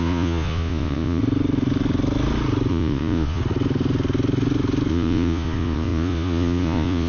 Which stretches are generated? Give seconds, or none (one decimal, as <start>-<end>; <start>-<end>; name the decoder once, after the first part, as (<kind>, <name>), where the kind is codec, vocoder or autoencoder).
0.0-1.2 (vocoder, Vocos); 2.7-3.4; 4.9-7.1